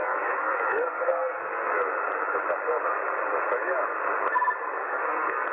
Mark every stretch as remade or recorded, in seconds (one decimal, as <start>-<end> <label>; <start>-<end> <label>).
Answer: 0.0-1.7 remade; 1.7-4.8 recorded; 4.8-5.5 remade